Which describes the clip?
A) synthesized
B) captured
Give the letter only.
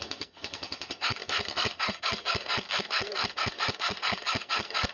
A